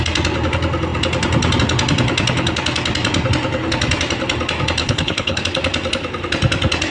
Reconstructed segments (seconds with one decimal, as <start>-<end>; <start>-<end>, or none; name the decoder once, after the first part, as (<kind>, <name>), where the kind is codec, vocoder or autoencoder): 4.8-5.4 (codec, HILCodec)